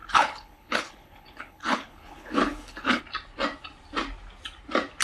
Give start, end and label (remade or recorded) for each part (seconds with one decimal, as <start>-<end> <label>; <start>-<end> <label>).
0.0-3.0 remade; 3.0-5.0 recorded